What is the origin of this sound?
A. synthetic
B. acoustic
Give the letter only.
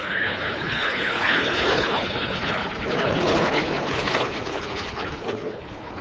A